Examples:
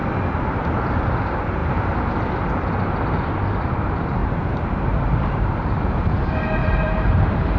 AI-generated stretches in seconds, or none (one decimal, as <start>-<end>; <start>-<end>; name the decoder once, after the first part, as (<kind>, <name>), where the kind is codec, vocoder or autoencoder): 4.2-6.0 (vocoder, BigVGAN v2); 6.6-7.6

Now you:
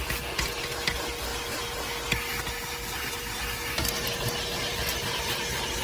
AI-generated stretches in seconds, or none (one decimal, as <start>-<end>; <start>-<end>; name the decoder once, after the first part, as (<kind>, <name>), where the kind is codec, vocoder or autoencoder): none

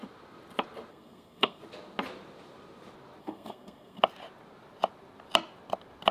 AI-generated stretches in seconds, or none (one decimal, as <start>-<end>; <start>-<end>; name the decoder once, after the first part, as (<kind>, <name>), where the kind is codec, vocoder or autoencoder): 0.9-1.6 (codec, SNAC); 3.2-4.0

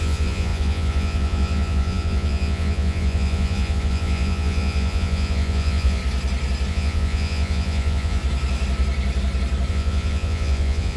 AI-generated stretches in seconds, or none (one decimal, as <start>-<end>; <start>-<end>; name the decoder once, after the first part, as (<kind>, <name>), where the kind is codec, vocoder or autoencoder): 0.0-6.0 (vocoder, Vocos); 6.7-8.2; 9.7-11.0

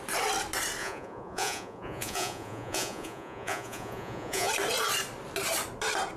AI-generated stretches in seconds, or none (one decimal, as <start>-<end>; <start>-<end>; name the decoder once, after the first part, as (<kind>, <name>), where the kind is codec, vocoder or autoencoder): 0.8-4.5 (vocoder, Vocos)

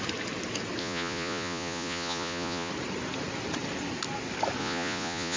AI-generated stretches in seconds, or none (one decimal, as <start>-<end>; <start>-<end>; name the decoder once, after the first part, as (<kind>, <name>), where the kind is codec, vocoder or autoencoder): 0.8-2.7 (vocoder, Vocos); 4.6-5.4